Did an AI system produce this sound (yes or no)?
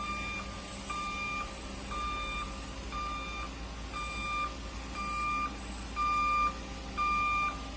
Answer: no